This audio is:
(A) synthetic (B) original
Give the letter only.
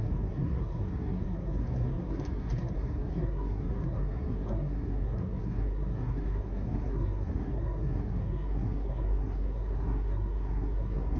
A